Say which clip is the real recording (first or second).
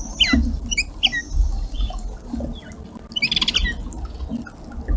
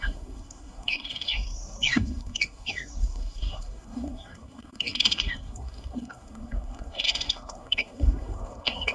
first